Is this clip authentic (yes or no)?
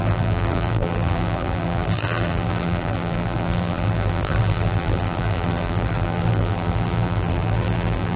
no